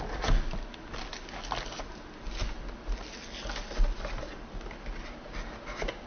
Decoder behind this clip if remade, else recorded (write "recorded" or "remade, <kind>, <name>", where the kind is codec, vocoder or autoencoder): recorded